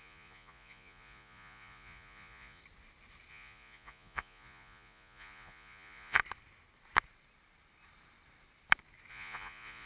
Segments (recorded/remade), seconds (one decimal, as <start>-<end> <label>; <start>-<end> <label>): 0.0-2.6 remade; 2.6-3.3 recorded; 3.3-6.2 remade; 6.2-9.1 recorded; 9.1-9.9 remade